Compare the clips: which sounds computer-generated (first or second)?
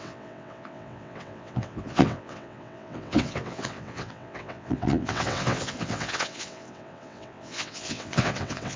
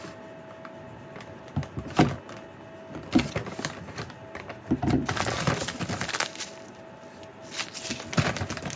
first